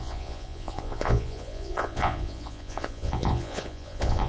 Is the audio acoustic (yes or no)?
no